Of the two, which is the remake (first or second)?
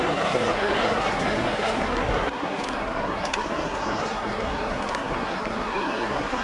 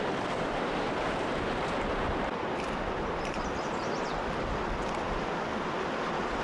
first